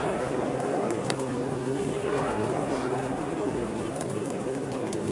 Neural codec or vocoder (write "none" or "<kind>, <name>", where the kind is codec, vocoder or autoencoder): codec, SNAC